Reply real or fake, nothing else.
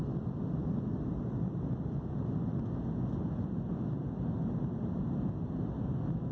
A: real